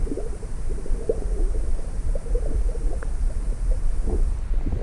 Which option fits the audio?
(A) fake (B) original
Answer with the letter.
A